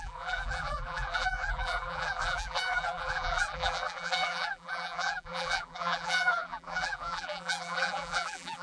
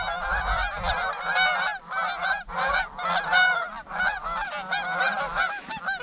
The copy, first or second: first